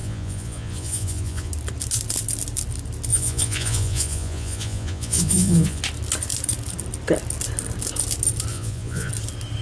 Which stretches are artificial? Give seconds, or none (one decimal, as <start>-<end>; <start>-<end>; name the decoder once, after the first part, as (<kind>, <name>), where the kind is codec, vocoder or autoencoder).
0.0-1.5 (vocoder, Vocos); 3.1-5.8; 8.5-9.1